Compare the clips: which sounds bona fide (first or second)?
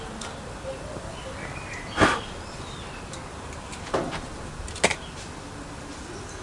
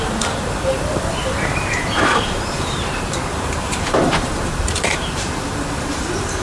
first